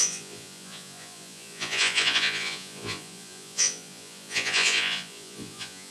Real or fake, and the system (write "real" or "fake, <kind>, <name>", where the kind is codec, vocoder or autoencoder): fake, vocoder, Vocos